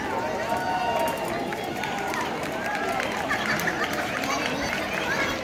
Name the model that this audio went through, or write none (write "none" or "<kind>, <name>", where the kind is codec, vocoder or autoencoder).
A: none